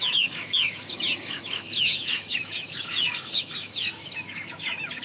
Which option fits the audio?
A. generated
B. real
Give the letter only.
A